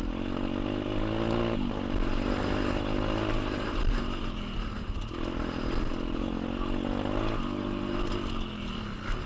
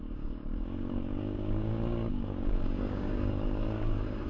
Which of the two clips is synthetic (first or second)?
second